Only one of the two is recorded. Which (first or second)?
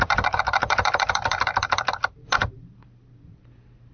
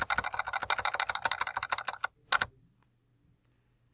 second